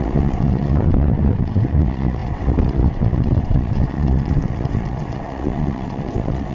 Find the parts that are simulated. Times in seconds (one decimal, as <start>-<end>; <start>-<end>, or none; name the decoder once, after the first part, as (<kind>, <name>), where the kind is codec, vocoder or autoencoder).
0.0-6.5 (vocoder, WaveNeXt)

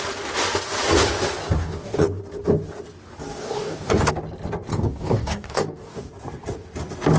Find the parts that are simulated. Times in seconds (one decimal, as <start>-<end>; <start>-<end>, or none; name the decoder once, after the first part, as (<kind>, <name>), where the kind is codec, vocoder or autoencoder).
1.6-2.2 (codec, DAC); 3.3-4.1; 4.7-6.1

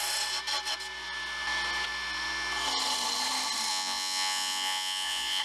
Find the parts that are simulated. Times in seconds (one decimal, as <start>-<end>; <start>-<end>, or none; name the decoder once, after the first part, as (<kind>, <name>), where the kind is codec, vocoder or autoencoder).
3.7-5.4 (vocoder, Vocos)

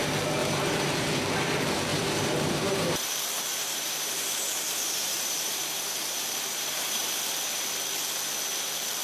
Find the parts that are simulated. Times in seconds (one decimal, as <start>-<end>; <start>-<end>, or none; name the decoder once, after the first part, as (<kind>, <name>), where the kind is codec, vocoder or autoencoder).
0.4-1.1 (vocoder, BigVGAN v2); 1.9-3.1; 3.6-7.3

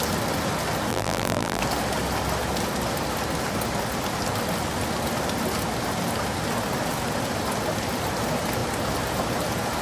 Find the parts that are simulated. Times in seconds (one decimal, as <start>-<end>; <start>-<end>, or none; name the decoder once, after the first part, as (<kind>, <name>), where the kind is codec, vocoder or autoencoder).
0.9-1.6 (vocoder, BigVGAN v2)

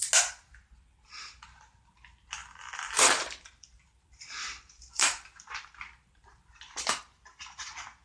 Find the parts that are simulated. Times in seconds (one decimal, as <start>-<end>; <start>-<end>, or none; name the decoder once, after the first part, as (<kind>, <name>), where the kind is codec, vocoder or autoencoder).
2.4-7.0 (vocoder, BigVGAN v2)